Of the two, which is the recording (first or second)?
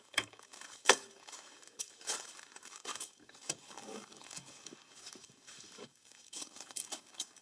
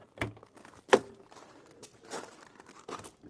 second